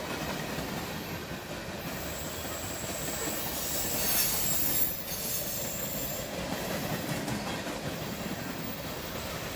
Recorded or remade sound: recorded